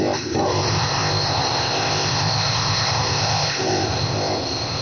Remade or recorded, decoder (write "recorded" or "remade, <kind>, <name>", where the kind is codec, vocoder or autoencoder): remade, codec, ZipCodec